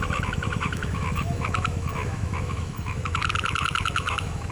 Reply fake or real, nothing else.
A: fake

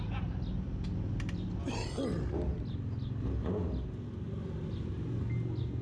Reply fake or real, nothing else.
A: real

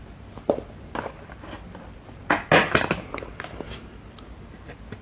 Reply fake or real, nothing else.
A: real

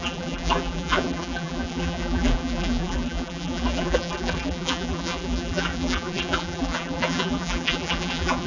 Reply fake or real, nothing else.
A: fake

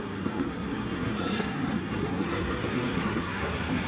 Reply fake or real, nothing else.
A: fake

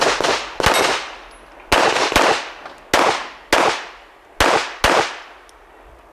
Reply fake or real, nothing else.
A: real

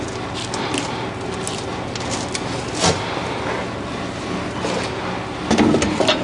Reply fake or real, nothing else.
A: real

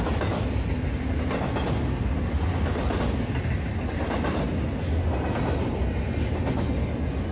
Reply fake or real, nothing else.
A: real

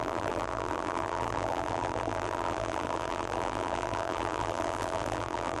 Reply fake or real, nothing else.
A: fake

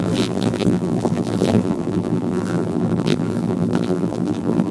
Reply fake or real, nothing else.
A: fake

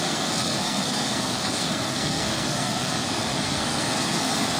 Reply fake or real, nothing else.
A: fake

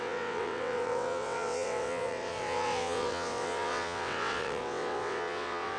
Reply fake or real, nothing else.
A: fake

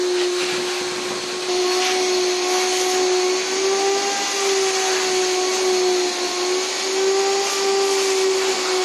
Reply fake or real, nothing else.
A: real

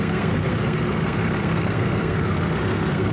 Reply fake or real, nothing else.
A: fake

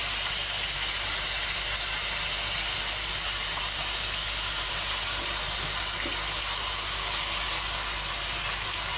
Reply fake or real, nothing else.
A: real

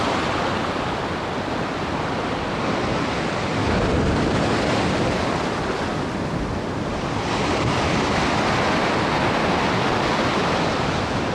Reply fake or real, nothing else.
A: real